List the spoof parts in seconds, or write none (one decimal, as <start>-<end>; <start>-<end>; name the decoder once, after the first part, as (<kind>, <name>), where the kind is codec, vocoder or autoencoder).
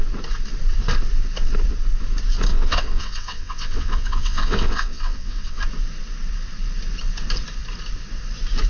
2.5-5.6 (vocoder, WaveNeXt)